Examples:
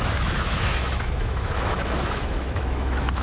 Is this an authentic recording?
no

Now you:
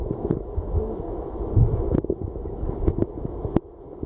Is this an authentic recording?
no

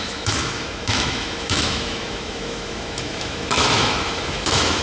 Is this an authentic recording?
no